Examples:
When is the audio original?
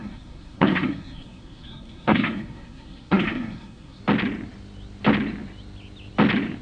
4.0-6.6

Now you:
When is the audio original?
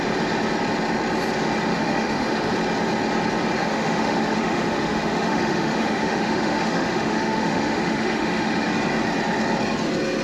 0.0-1.7; 2.5-3.6; 8.7-10.2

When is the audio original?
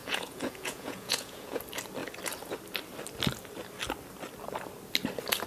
1.6-5.5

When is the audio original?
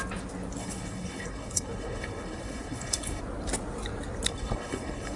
0.0-0.6; 3.2-4.3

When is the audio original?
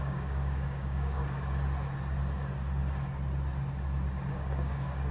1.2-4.3